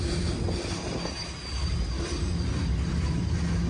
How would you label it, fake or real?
real